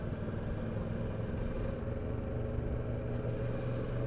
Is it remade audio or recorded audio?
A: recorded